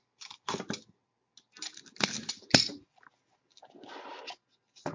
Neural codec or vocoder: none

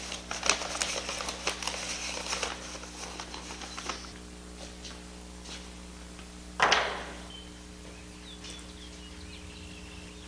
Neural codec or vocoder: none